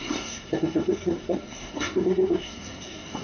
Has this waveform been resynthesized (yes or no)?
yes